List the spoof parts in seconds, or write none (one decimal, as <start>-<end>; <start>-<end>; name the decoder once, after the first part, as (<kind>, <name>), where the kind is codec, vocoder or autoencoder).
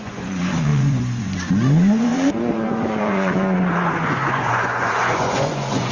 0.0-5.9 (vocoder, Vocos)